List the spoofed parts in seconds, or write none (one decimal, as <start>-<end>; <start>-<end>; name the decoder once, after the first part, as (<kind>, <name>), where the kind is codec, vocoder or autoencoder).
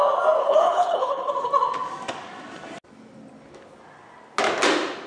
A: 0.4-1.3 (codec, HILCodec)